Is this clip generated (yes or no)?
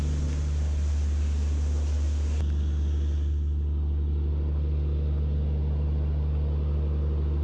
no